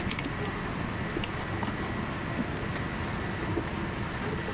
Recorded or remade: recorded